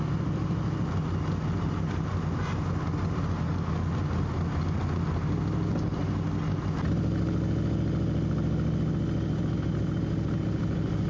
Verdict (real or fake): real